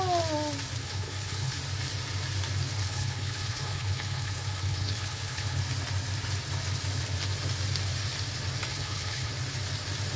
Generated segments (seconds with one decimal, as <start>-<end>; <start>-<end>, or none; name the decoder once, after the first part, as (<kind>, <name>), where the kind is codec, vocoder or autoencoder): 0.8-1.6 (codec, HILCodec); 2.8-5.6; 8.7-9.3